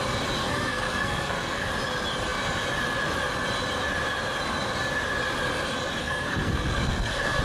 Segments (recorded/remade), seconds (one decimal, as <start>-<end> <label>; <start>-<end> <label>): 0.0-0.4 recorded; 0.4-1.7 remade; 1.7-6.0 recorded; 6.0-7.4 remade